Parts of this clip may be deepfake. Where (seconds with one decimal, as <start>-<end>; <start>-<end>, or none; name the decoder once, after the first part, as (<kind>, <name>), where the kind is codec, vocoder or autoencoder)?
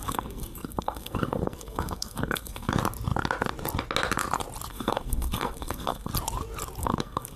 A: 0.0-2.7 (codec, SNAC); 4.7-6.1; 6.8-7.4